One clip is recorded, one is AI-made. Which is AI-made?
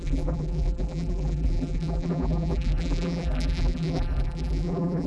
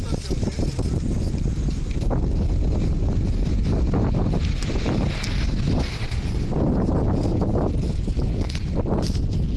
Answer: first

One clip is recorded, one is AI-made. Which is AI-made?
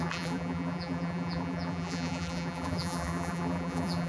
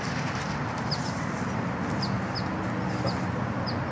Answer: first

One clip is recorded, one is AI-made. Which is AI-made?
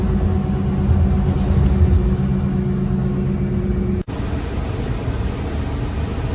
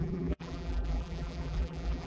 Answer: second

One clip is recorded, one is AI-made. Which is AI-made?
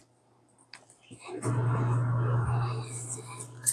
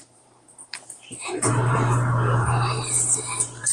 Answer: second